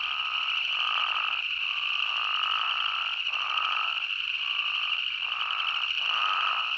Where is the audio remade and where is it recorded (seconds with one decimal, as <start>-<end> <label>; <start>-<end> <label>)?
0.0-6.8 recorded